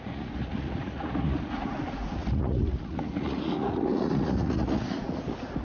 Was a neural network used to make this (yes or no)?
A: yes